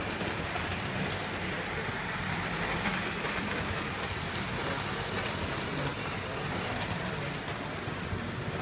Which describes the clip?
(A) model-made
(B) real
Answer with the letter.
B